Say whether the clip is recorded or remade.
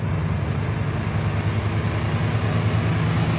recorded